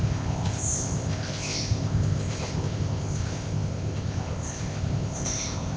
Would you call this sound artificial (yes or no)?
yes